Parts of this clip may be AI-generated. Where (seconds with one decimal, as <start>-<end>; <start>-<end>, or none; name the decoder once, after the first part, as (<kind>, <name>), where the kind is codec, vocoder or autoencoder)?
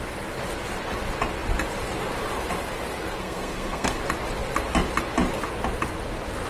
3.2-4.0 (codec, SNAC)